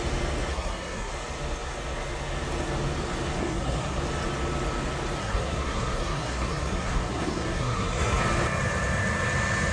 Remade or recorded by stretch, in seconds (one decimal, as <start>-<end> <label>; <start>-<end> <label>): 0.0-0.5 recorded; 0.5-1.1 remade; 1.1-3.4 recorded; 3.4-4.0 remade; 4.0-5.2 recorded; 5.2-8.2 remade; 8.2-9.7 recorded